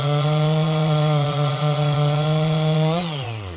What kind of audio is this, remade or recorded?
remade